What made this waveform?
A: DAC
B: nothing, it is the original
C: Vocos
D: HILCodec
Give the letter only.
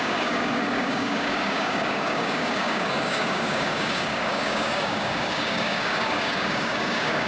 A